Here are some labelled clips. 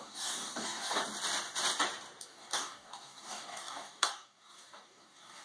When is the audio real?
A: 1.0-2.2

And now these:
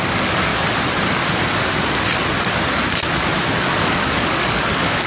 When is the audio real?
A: 0.5-3.6

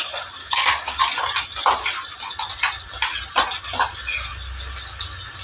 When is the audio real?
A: 0.0-0.4; 1.0-5.4

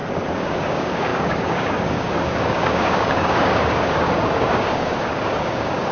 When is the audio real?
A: none

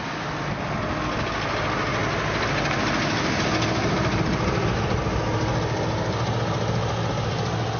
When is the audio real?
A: 0.0-7.8